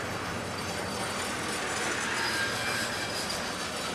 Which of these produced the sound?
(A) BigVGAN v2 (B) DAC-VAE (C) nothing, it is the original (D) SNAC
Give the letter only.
C